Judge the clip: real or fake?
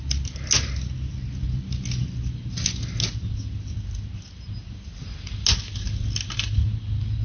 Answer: real